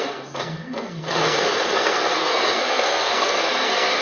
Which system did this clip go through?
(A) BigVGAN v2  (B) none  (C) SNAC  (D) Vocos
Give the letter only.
C